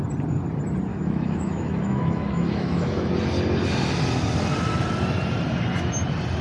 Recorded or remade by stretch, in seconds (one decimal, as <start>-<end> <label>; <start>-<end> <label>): 0.0-0.9 recorded; 0.9-3.1 remade; 3.1-6.4 recorded